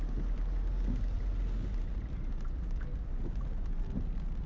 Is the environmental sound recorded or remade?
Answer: recorded